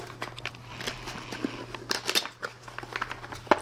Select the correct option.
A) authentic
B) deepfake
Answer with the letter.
A